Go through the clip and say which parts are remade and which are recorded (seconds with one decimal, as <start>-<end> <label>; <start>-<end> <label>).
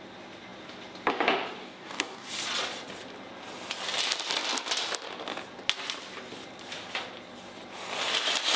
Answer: 0.0-1.6 recorded; 1.6-2.3 remade; 2.3-8.6 recorded